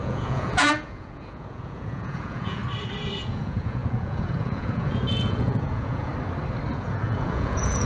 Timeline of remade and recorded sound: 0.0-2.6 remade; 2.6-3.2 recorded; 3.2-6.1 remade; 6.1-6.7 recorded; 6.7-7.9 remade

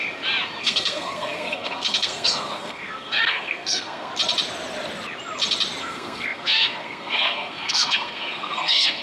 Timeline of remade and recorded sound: 0.0-0.6 recorded; 0.6-4.1 remade; 4.1-5.8 recorded; 5.8-9.0 remade

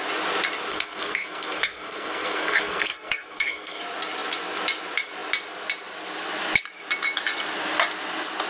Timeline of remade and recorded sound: 0.0-0.7 recorded; 0.7-3.8 remade; 3.8-8.5 recorded

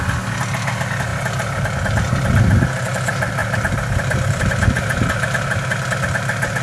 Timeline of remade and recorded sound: 0.0-3.4 recorded; 3.4-4.5 remade; 4.5-6.6 recorded

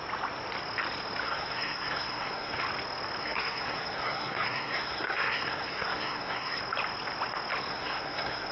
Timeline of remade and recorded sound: 0.0-1.2 recorded; 1.2-2.6 remade; 2.6-3.2 recorded; 3.2-6.6 remade; 6.6-7.7 recorded; 7.7-8.5 remade

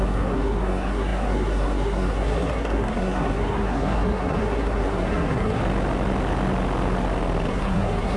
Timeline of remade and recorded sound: 0.0-5.6 remade; 5.6-7.5 recorded; 7.5-8.2 remade

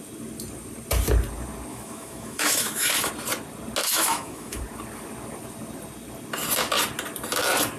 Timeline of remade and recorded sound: 0.0-1.7 recorded; 1.7-3.1 remade; 3.1-3.8 recorded; 3.8-4.6 remade; 4.6-7.8 recorded